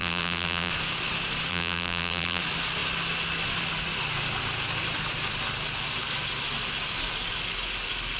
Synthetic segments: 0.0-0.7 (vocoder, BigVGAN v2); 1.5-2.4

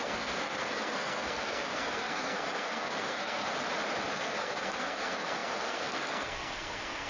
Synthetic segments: 0.0-3.5 (codec, SNAC); 4.1-7.1